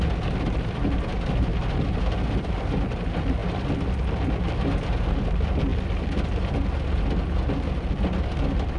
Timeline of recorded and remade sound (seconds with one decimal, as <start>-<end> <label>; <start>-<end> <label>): 0.0-8.8 recorded